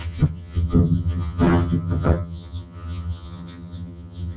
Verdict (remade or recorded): remade